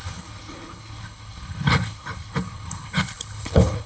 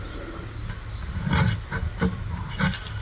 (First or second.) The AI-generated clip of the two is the first